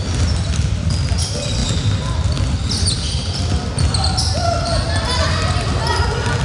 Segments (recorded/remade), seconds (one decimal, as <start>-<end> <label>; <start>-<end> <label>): 0.0-6.4 recorded

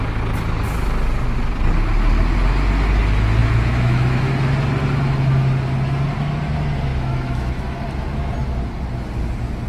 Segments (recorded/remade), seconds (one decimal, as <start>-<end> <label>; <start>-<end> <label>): 0.0-3.4 recorded; 3.4-4.3 remade; 4.3-6.9 recorded; 6.9-7.5 remade; 7.5-9.7 recorded

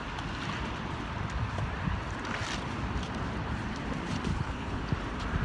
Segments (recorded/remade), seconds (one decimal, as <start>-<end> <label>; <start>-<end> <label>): 0.0-4.3 recorded; 4.3-4.8 remade; 4.8-5.4 recorded

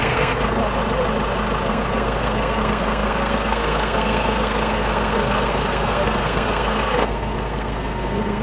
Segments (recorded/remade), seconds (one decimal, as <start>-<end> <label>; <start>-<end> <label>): 0.0-0.6 remade; 0.6-1.7 recorded; 1.7-8.4 remade

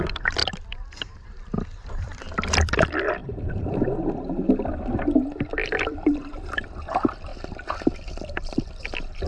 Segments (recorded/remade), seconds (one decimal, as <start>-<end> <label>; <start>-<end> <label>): 0.0-7.3 remade; 7.3-8.5 recorded; 8.5-9.3 remade

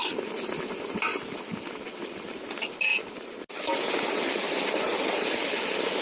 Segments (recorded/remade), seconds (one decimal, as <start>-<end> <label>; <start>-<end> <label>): 0.0-6.0 recorded

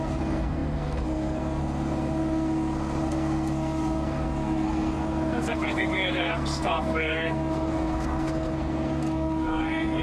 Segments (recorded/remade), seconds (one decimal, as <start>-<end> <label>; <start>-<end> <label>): 0.0-10.0 remade

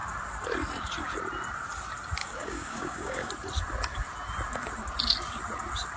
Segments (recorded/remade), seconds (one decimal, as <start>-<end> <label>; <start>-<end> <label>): 0.0-2.2 recorded; 2.2-3.3 remade; 3.3-6.0 recorded